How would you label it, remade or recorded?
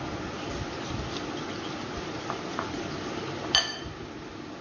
recorded